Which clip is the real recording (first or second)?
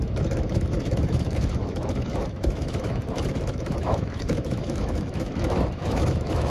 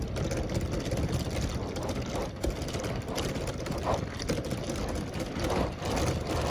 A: second